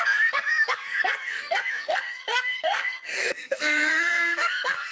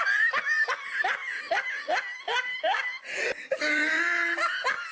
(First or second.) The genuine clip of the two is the second